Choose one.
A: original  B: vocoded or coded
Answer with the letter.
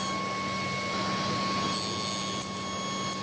A